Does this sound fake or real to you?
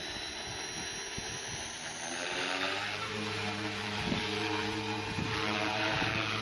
fake